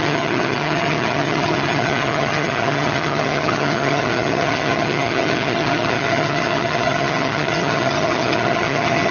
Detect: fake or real fake